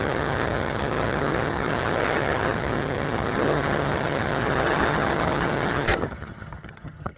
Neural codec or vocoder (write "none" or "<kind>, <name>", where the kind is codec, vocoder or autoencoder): vocoder, HiFi-GAN